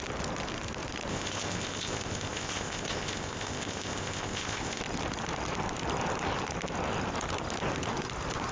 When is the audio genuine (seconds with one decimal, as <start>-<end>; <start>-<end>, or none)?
0.0-1.1; 4.8-8.5